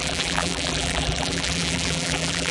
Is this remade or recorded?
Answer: remade